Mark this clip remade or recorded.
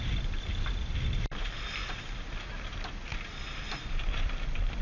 recorded